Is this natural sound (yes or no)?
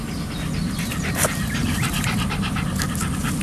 yes